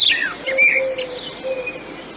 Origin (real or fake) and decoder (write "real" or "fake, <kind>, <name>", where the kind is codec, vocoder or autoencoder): real